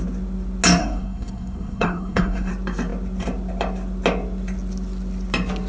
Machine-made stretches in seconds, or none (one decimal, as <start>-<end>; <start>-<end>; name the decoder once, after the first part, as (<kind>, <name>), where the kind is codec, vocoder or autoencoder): 0.8-2.5 (codec, SNAC)